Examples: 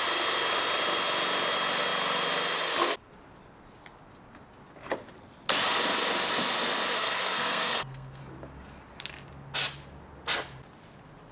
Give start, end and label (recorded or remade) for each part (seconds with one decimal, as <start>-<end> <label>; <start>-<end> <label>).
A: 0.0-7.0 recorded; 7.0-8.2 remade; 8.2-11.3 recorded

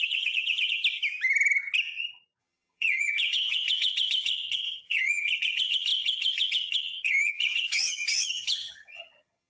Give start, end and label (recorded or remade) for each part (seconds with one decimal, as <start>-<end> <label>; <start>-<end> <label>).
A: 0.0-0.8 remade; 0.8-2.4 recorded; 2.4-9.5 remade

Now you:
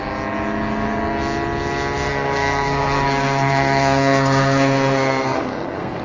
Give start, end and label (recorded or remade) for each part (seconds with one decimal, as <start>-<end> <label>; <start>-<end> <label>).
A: 0.0-2.1 recorded; 2.1-6.0 remade